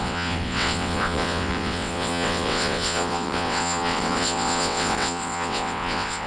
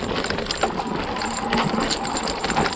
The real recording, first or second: second